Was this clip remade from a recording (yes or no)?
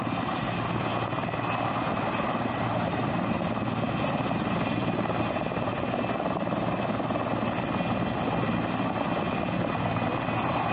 no